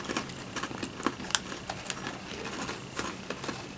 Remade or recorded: recorded